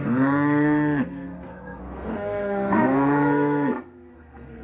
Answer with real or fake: fake